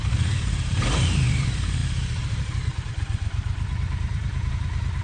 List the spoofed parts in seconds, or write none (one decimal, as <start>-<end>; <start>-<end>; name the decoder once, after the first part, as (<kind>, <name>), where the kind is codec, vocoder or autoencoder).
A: 0.0-5.0 (vocoder, BigVGAN v2)